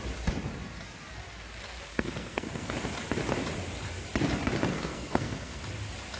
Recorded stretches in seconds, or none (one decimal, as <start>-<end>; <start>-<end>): 0.0-1.9; 2.7-4.7; 5.6-6.2